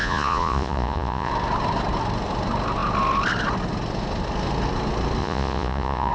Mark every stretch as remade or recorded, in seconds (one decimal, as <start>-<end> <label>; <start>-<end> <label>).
0.0-1.3 remade; 1.3-5.2 recorded; 5.2-6.1 remade

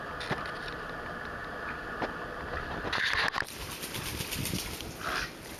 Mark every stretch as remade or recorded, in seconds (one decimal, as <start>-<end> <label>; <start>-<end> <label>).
0.0-5.6 recorded

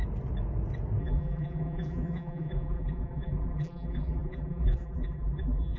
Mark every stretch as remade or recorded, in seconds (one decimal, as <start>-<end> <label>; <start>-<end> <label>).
0.0-1.0 recorded; 1.0-5.8 remade

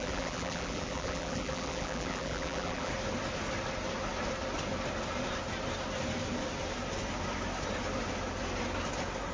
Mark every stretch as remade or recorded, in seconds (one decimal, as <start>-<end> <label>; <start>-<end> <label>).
0.0-2.9 remade; 2.9-9.3 recorded

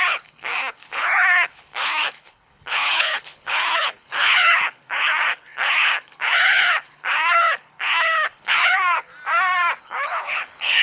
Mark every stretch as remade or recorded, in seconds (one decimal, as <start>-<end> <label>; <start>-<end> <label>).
0.0-9.1 remade; 9.1-9.8 recorded; 9.8-10.8 remade

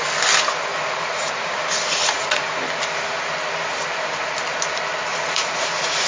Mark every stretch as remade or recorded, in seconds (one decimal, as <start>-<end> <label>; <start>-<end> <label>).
0.0-0.7 recorded; 0.7-2.6 remade; 2.6-5.1 recorded; 5.1-6.1 remade

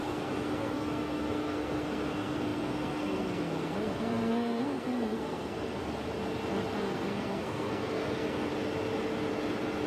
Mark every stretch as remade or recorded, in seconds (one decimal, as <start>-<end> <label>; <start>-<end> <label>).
0.0-5.8 remade; 5.8-6.8 recorded; 6.8-8.5 remade; 8.5-9.9 recorded

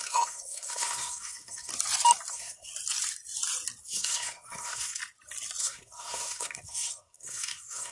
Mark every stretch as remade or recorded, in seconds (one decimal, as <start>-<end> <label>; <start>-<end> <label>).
0.0-1.7 remade; 1.7-2.3 recorded; 2.3-2.7 remade; 2.7-3.8 recorded; 3.8-5.0 remade; 5.0-5.6 recorded; 5.6-7.9 remade